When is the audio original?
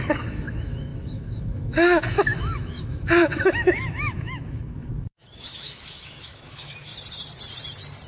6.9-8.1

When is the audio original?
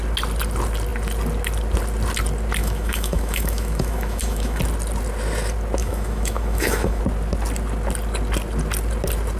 0.0-2.6; 4.6-5.8; 7.0-9.4